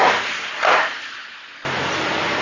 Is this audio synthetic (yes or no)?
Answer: no